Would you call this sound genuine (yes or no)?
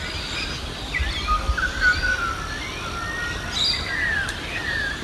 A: yes